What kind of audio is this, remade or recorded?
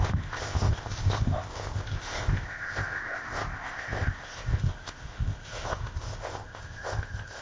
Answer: remade